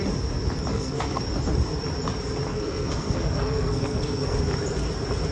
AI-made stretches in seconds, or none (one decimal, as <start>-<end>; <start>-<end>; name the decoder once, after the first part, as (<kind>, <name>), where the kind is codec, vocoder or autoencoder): 0.7-1.2 (codec, SNAC); 2.5-4.4